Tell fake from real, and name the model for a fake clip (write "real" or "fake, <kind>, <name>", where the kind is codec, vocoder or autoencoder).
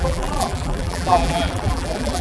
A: fake, vocoder, BigVGAN v2